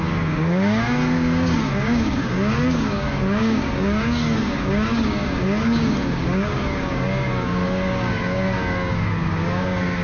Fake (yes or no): yes